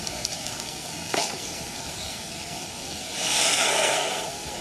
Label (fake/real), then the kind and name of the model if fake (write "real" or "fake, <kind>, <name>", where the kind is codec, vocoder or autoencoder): fake, codec, SNAC